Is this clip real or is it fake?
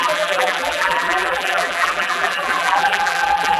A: fake